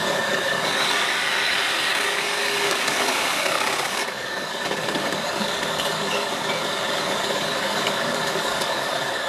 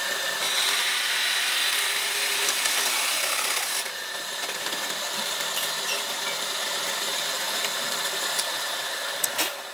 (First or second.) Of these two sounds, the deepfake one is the first